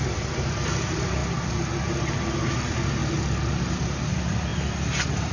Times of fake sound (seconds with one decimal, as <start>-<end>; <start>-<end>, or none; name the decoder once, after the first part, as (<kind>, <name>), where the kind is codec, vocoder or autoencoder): 0.0-1.2 (vocoder, BigVGAN v2); 2.5-3.0; 4.1-4.5